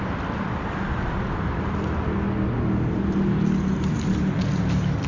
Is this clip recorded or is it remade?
recorded